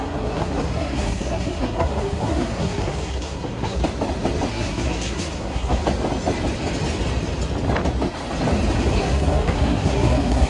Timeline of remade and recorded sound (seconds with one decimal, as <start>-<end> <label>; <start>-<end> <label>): 0.0-3.8 remade; 3.8-4.5 recorded; 4.5-5.8 remade; 5.8-9.0 recorded; 9.0-10.5 remade